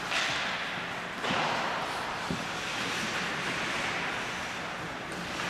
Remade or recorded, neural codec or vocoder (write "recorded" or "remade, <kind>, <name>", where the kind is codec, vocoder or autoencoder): recorded